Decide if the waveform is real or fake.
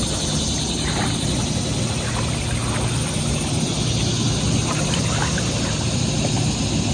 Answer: real